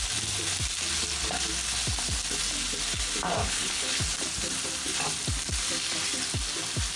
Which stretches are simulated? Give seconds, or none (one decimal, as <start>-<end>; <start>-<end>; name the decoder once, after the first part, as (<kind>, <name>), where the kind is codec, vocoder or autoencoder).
3.4-4.0 (codec, HILCodec)